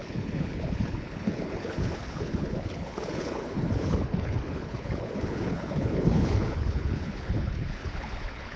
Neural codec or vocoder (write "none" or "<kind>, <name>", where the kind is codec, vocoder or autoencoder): codec, HILCodec